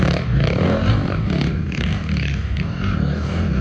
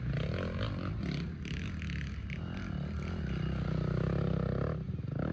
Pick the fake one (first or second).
first